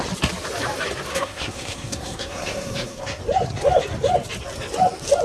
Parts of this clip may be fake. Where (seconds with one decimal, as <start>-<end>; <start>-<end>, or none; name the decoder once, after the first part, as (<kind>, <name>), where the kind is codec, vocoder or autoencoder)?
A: 1.1-3.2 (codec, SNAC)